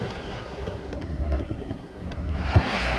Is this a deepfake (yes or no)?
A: yes